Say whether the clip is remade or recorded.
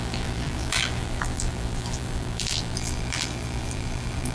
remade